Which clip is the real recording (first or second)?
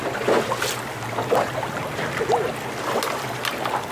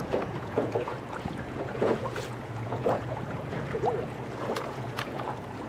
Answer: first